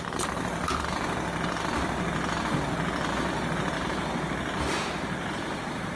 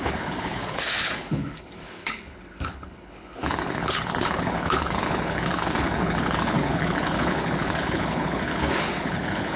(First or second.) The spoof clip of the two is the second